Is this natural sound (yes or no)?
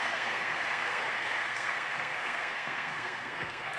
no